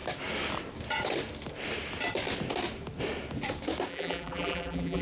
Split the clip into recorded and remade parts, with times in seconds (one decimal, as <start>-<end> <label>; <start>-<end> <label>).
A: 0.0-3.9 recorded; 3.9-5.0 remade